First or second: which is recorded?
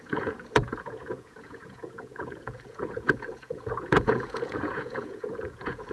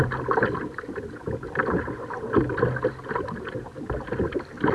second